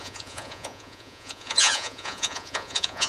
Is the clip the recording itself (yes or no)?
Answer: no